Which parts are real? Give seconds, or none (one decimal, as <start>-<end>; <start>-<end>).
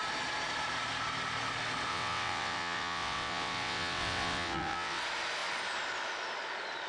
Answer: 0.0-1.9; 5.0-6.9